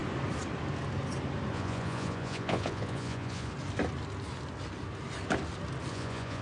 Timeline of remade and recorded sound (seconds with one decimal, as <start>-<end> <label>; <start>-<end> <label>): 0.0-1.5 recorded; 1.5-3.5 remade; 3.5-5.9 recorded; 5.9-6.4 remade